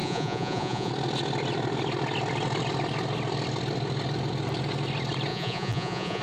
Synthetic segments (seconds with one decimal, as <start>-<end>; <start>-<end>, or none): 0.0-0.9; 5.3-6.2